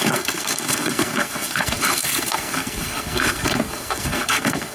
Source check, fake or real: fake